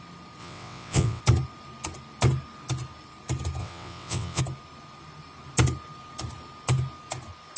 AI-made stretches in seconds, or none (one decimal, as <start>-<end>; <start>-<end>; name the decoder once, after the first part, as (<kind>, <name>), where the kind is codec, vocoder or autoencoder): 0.4-1.2 (vocoder, WaveNeXt); 3.6-4.4